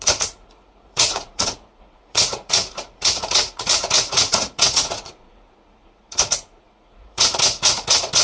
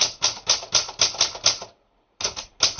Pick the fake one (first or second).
first